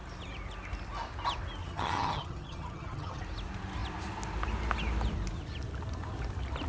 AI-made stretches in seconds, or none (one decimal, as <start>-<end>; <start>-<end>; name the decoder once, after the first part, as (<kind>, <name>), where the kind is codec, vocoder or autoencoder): 1.6-3.2 (vocoder, HiFi-GAN)